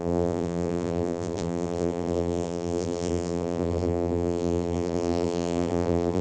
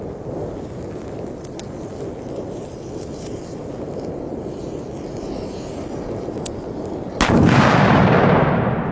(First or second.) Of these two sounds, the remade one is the first